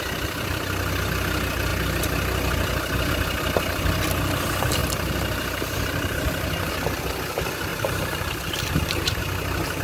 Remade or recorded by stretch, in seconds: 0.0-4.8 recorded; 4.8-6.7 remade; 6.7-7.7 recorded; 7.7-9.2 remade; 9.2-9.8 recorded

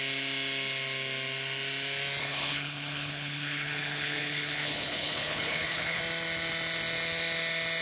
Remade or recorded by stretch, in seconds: 0.0-2.2 recorded; 2.2-6.0 remade; 6.0-7.8 recorded